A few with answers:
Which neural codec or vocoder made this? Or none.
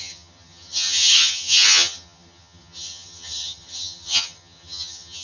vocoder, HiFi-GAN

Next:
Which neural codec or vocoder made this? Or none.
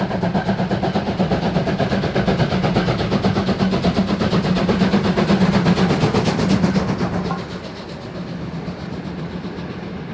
none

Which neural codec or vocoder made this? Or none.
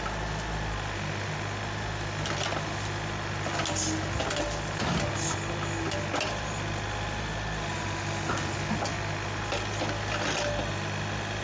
none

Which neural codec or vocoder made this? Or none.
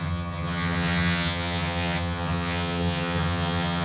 vocoder, HiFi-GAN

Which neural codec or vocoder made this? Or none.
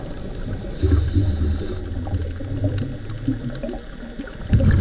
none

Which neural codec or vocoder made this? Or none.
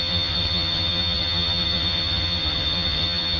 vocoder, HiFi-GAN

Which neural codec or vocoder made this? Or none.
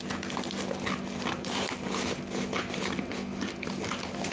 none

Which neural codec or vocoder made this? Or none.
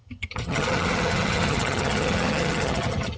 vocoder, HiFi-GAN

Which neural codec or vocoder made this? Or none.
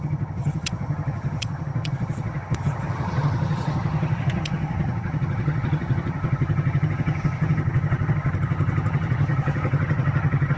vocoder, HiFi-GAN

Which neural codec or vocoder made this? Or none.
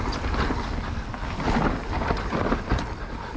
none